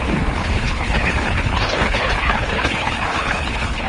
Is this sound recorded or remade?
remade